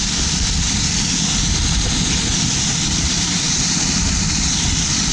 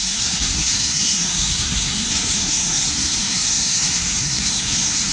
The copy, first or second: second